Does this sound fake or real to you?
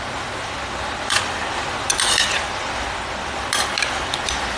fake